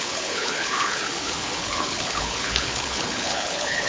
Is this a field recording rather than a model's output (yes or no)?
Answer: no